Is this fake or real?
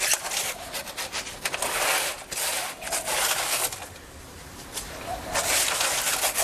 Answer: fake